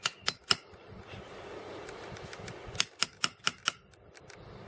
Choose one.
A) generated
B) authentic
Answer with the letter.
B